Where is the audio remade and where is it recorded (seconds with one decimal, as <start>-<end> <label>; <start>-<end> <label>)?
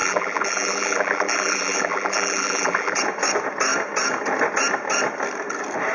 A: 0.0-3.0 remade; 3.0-5.9 recorded